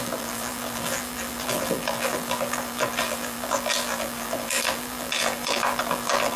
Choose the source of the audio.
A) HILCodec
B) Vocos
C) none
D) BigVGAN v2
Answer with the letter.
D